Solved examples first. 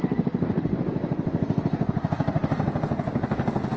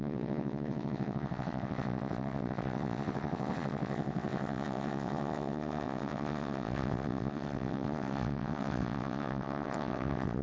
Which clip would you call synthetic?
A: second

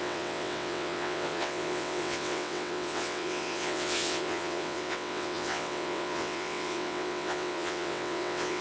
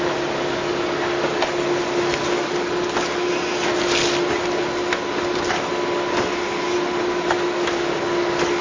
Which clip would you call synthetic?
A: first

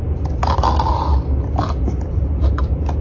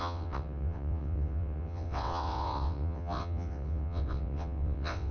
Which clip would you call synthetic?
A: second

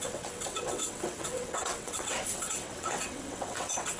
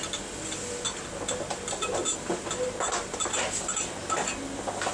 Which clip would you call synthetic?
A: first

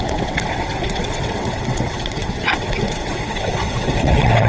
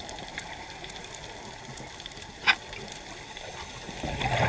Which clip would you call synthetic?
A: first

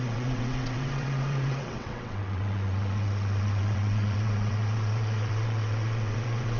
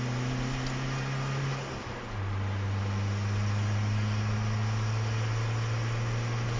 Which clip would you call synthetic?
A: first